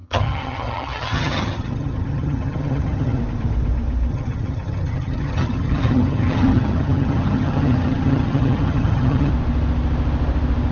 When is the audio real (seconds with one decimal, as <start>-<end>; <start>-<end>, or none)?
3.2-4.1; 9.3-10.7